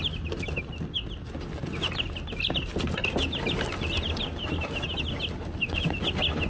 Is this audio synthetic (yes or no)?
no